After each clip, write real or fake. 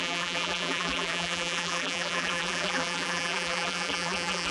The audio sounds fake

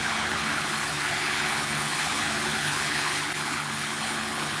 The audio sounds fake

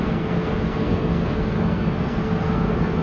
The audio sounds fake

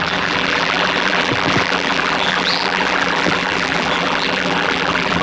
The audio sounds fake